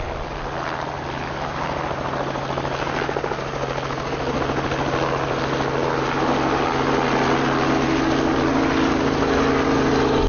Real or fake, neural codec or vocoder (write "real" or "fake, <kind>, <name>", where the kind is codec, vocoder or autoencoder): real